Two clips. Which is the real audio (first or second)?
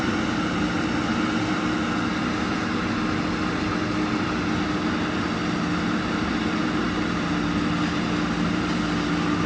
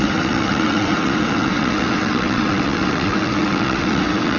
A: first